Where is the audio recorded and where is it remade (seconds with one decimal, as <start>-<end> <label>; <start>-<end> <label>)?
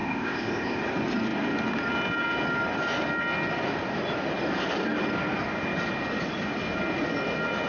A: 0.0-0.8 remade; 0.8-7.7 recorded